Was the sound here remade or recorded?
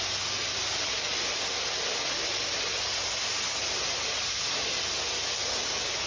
recorded